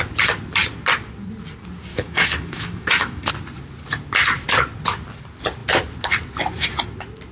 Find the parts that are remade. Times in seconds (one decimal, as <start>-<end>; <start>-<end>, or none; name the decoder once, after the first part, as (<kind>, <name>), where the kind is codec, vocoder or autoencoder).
1.9-3.3 (autoencoder, DAC-VAE)